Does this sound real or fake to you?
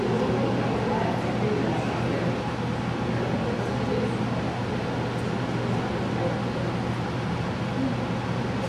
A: real